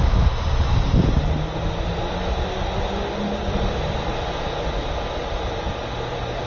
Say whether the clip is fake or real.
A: real